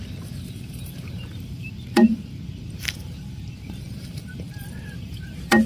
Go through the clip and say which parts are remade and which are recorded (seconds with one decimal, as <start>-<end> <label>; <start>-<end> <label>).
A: 0.0-5.7 remade